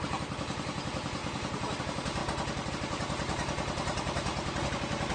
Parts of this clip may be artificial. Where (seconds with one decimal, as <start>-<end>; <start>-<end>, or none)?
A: 0.0-2.2; 2.7-4.3